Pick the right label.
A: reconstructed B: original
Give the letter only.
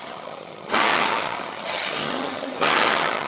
A